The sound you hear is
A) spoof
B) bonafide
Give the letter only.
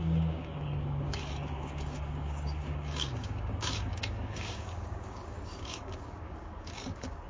A